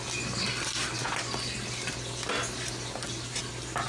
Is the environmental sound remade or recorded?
recorded